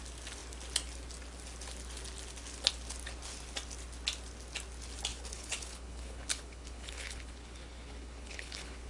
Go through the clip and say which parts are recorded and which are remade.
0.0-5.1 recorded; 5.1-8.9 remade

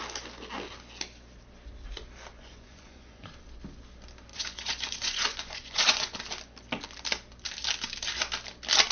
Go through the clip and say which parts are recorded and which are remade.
0.0-2.3 recorded; 2.3-3.3 remade; 3.3-4.3 recorded; 4.3-6.2 remade; 6.2-8.9 recorded

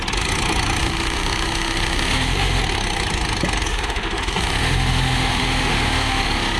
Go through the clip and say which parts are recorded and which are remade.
0.0-0.8 recorded; 0.8-2.6 remade; 2.6-3.7 recorded; 3.7-6.6 remade

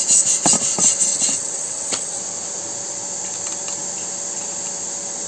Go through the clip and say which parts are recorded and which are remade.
0.0-1.1 recorded; 1.1-2.2 remade; 2.2-5.3 recorded

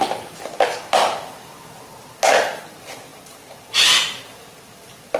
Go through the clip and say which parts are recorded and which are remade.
0.0-5.2 recorded

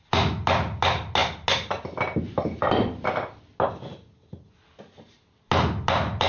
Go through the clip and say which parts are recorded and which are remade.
0.0-6.3 recorded

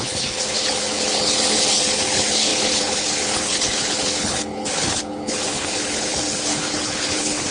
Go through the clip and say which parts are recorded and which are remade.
0.0-7.5 remade